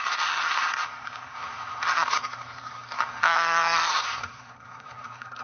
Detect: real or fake fake